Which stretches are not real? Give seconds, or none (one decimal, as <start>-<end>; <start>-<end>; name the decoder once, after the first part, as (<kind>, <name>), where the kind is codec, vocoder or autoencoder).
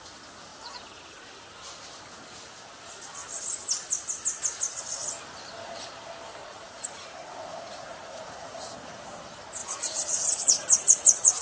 0.5-1.0 (vocoder, Vocos); 6.4-8.7; 9.6-11.4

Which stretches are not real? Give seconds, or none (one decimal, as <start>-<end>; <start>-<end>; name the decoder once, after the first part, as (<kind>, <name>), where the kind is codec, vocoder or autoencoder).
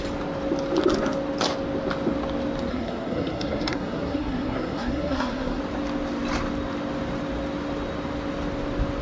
2.7-5.6 (codec, SNAC)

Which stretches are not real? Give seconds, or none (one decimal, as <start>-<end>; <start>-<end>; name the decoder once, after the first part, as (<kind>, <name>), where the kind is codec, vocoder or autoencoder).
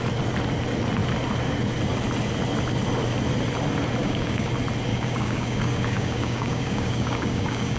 4.0-4.5 (codec, DAC); 4.9-7.8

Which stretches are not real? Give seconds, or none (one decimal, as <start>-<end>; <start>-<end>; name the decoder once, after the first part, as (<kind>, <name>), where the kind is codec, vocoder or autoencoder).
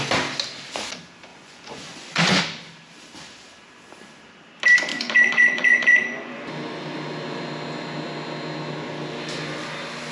1.3-2.4 (vocoder, Vocos); 4.9-6.5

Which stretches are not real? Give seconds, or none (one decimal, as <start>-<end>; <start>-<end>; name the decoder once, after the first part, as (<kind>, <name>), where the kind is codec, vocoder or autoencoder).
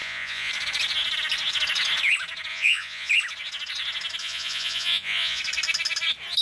0.0-0.5 (vocoder, Vocos); 2.5-3.1; 4.2-5.4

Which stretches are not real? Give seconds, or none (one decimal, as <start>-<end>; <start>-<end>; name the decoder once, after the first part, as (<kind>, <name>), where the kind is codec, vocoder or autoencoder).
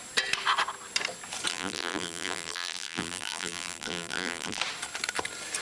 1.5-4.6 (vocoder, BigVGAN v2)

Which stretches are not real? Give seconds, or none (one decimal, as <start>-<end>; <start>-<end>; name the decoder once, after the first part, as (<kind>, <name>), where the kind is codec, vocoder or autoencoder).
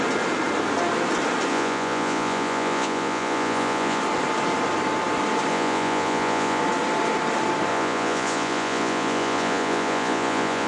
1.5-4.0 (vocoder, Vocos); 5.5-6.6; 7.7-10.7